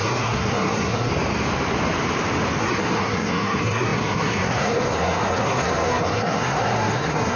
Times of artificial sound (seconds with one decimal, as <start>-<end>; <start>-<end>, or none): 0.0-1.1; 2.6-7.4